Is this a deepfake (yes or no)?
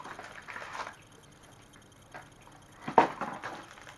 no